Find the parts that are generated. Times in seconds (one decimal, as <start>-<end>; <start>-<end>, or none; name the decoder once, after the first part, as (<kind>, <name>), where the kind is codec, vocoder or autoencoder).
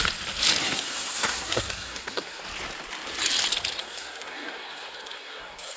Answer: 0.6-2.4 (codec, SNAC); 3.8-5.8